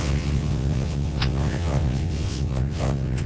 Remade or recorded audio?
remade